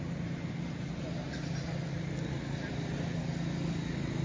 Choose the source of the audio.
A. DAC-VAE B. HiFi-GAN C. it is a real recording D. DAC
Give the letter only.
C